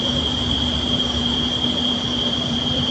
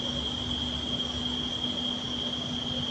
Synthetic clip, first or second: first